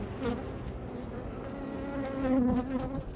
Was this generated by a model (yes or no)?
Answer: no